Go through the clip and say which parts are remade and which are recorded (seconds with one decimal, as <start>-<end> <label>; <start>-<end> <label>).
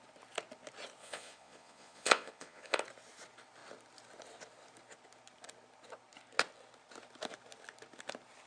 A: 0.0-1.0 recorded; 1.0-2.8 remade; 2.8-8.5 recorded